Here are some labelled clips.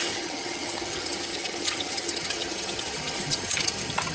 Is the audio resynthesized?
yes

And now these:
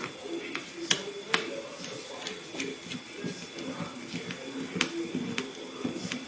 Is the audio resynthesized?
no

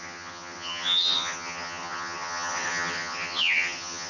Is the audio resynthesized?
yes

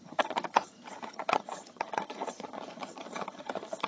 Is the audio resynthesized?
yes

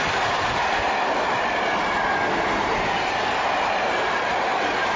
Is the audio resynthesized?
no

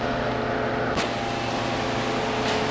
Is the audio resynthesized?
no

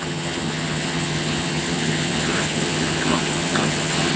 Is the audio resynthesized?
yes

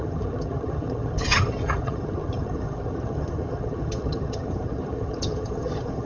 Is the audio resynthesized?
yes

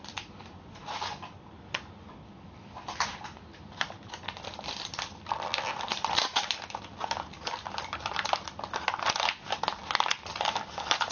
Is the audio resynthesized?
no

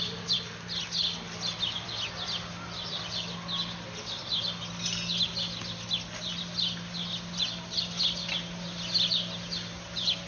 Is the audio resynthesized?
no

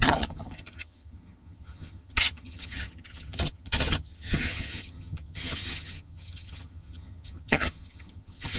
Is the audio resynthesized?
yes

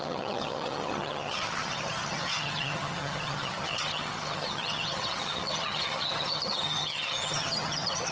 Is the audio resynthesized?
yes